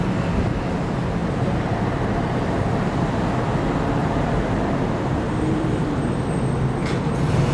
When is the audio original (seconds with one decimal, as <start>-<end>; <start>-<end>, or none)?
0.0-1.2; 3.2-4.0; 6.2-7.5